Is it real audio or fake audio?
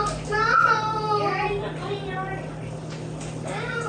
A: real